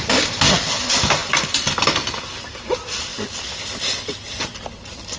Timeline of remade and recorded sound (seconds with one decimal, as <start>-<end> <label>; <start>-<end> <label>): 0.0-5.2 recorded